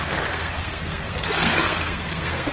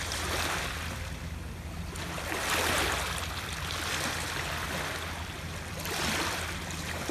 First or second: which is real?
second